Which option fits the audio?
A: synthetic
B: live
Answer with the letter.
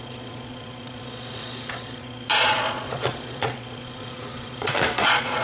A